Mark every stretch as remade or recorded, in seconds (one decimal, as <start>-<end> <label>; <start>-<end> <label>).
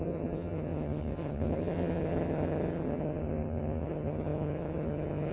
0.0-5.3 remade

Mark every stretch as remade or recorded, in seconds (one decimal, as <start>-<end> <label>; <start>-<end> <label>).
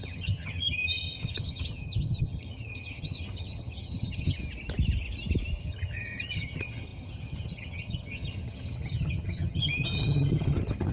0.0-4.4 remade; 4.4-5.6 recorded; 5.6-10.9 remade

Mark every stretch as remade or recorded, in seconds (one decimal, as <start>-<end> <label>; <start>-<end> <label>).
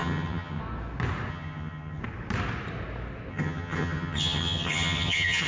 0.0-0.6 remade; 0.6-1.3 recorded; 1.3-2.0 remade; 2.0-3.3 recorded; 3.3-5.5 remade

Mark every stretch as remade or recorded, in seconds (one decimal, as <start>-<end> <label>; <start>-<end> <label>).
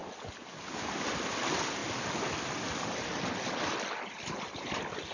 0.0-5.1 recorded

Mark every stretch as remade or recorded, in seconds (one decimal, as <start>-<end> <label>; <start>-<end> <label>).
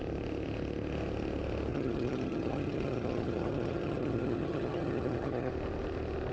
0.0-1.7 recorded; 1.7-5.5 remade; 5.5-6.3 recorded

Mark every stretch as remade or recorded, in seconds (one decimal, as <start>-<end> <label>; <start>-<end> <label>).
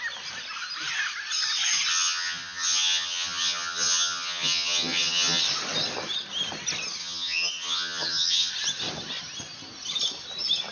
0.0-1.9 recorded; 1.9-5.4 remade; 5.4-7.0 recorded; 7.0-8.5 remade; 8.5-10.7 recorded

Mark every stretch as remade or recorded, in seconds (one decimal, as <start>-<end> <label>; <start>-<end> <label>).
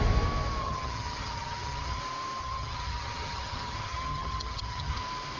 0.0-0.6 recorded; 0.6-2.0 remade; 2.0-2.4 recorded; 2.4-5.0 remade; 5.0-5.4 recorded